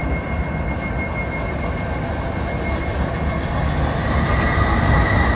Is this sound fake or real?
real